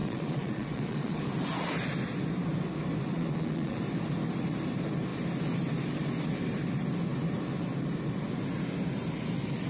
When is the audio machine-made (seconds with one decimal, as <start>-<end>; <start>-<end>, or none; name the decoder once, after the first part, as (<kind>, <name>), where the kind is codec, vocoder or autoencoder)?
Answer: 0.0-1.2 (vocoder, Vocos); 3.1-3.8